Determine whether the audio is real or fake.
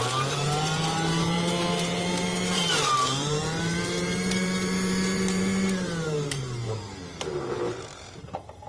fake